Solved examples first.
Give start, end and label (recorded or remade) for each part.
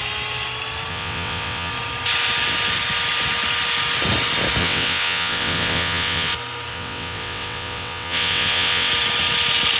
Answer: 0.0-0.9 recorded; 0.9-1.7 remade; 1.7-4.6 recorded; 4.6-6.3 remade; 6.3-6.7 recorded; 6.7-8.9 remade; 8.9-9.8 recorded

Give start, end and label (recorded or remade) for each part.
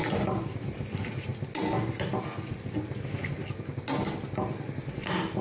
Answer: 0.0-5.4 recorded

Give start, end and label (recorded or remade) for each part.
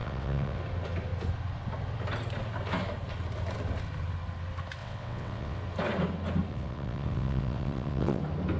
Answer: 0.0-0.6 remade; 0.6-4.8 recorded; 4.8-5.6 remade; 5.6-6.5 recorded; 6.5-8.2 remade; 8.2-8.6 recorded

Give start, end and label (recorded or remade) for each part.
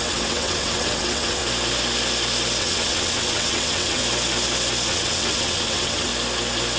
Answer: 0.0-1.4 remade; 1.4-2.6 recorded; 2.6-4.0 remade; 4.0-4.9 recorded; 4.9-6.1 remade; 6.1-6.8 recorded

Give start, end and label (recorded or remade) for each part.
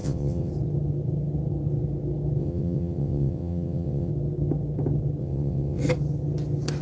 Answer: 0.0-0.5 remade; 0.5-2.4 recorded; 2.4-4.1 remade; 4.1-5.2 recorded; 5.2-5.8 remade; 5.8-6.8 recorded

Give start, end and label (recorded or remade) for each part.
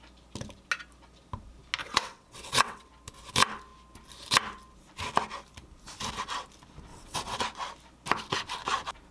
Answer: 0.0-1.8 recorded; 1.8-2.9 remade; 2.9-6.9 recorded; 6.9-7.4 remade; 7.4-9.1 recorded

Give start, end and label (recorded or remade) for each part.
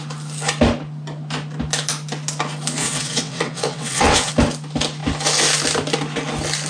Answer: 0.0-2.8 recorded; 2.8-4.3 remade; 4.3-6.7 recorded